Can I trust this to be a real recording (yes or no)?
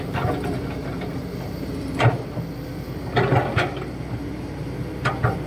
yes